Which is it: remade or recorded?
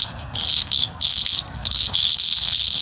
remade